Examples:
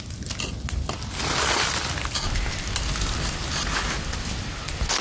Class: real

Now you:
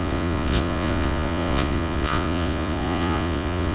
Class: fake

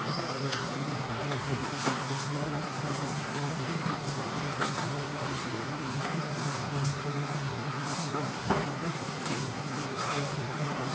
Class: fake